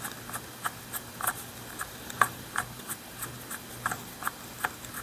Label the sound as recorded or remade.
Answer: recorded